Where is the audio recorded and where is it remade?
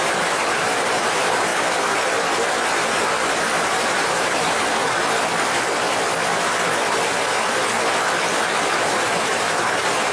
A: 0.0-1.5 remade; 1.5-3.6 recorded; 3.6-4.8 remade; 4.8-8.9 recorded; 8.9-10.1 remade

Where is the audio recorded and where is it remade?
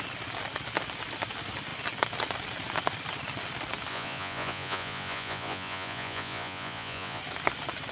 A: 0.0-3.9 recorded; 3.9-7.2 remade; 7.2-7.9 recorded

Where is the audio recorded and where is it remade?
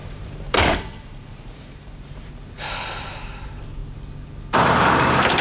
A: 0.0-2.3 remade; 2.3-5.4 recorded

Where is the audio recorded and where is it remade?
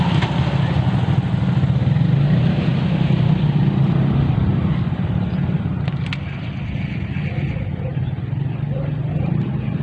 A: 0.0-9.8 recorded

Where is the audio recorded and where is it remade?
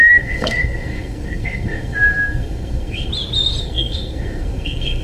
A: 0.0-3.1 remade; 3.1-3.6 recorded; 3.6-5.0 remade